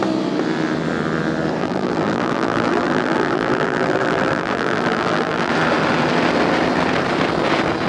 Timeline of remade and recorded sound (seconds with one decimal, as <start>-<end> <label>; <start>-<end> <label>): 0.0-1.6 recorded; 1.6-5.5 remade; 5.5-7.9 recorded